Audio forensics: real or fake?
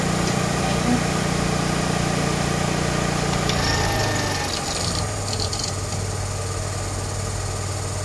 real